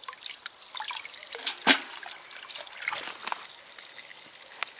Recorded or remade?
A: recorded